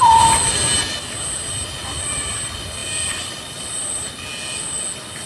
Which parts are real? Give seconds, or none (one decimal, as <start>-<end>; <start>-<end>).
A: 0.0-5.3